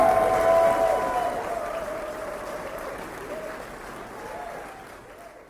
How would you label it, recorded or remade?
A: recorded